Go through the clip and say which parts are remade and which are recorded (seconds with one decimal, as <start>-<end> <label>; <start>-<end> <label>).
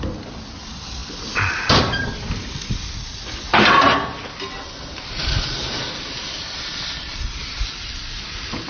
0.0-8.7 recorded